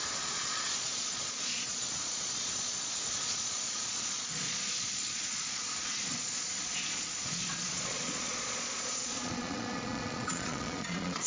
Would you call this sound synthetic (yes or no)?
yes